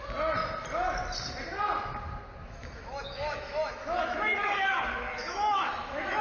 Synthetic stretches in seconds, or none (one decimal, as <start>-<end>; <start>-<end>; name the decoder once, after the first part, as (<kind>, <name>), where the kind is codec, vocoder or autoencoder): 2.4-6.2 (autoencoder, DAC-VAE)